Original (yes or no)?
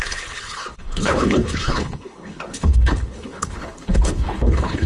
no